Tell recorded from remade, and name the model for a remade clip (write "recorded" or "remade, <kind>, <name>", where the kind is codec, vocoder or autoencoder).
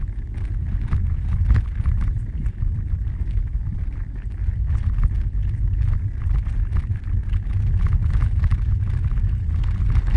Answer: recorded